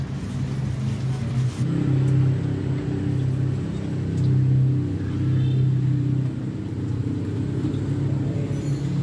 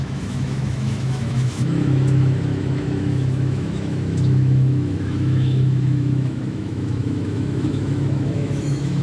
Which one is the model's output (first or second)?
second